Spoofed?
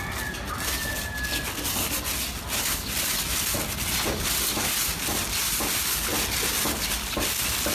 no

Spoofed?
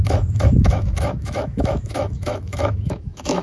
yes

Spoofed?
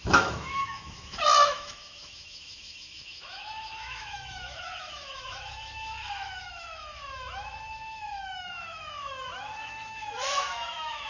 yes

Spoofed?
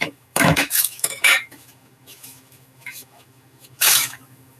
yes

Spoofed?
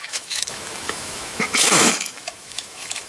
yes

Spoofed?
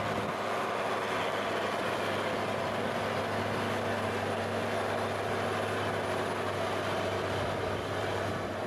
no